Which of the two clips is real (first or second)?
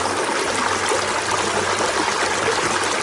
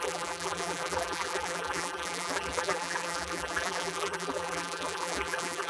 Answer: first